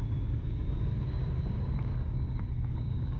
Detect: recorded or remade remade